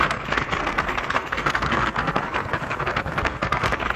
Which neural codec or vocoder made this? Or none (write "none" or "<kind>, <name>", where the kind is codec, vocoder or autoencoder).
codec, SNAC